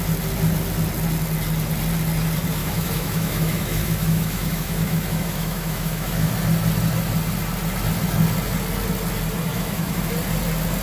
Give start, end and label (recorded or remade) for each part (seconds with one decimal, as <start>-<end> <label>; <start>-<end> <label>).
0.0-2.6 recorded; 2.6-6.3 remade; 6.3-9.5 recorded; 9.5-10.1 remade; 10.1-10.8 recorded